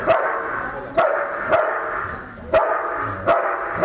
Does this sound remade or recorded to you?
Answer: recorded